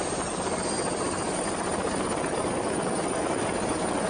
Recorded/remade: recorded